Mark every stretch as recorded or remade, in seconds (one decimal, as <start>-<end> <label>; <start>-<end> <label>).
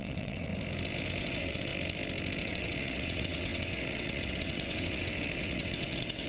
0.0-0.5 remade; 0.5-1.2 recorded; 1.2-1.7 remade; 1.7-2.4 recorded; 2.4-6.3 remade